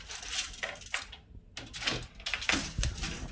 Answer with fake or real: real